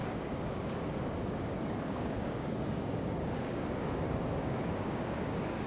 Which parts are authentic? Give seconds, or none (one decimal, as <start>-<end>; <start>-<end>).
none